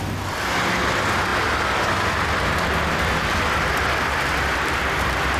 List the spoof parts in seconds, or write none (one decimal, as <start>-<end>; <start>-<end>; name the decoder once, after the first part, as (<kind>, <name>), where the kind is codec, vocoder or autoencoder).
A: none